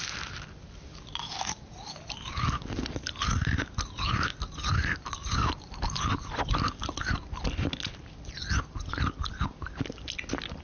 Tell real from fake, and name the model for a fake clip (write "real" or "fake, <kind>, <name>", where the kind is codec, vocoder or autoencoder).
real